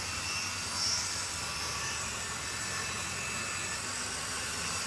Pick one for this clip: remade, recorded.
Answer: recorded